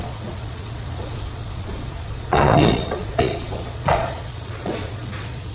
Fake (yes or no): yes